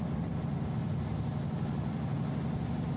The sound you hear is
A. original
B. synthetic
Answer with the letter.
A